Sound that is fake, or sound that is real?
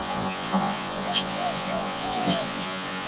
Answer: fake